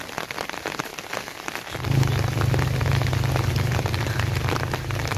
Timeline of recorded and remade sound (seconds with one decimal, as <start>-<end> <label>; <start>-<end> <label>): 0.0-5.2 recorded